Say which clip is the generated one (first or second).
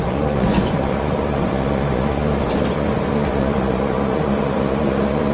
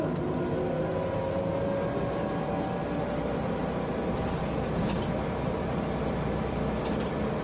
first